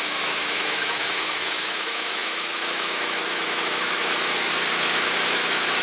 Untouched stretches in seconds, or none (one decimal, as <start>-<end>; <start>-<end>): none